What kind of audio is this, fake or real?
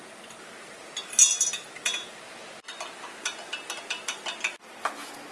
real